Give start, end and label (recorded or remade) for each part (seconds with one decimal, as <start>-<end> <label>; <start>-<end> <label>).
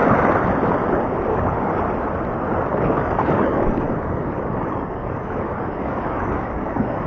0.0-1.3 recorded; 1.3-1.8 remade; 1.8-2.7 recorded; 2.7-7.1 remade